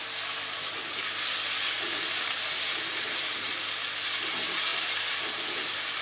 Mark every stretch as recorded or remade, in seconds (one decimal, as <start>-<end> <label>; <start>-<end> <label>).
0.0-0.8 remade; 0.8-1.9 recorded; 1.9-3.5 remade; 3.5-4.2 recorded; 4.2-6.0 remade